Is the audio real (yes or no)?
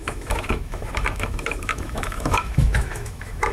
no